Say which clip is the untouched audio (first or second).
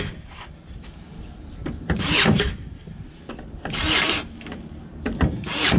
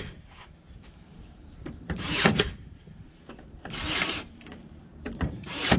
first